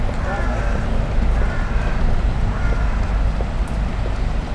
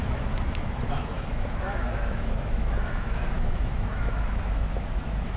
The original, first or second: first